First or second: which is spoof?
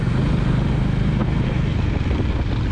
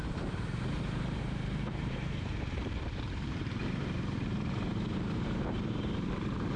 second